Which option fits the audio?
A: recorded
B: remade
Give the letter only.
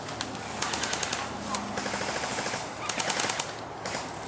A